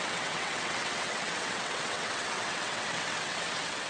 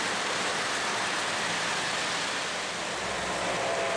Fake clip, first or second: first